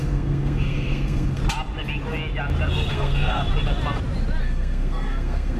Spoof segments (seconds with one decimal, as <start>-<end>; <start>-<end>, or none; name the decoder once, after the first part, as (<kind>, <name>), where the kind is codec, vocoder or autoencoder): 0.0-1.4 (codec, SNAC); 2.9-3.4; 4.4-5.6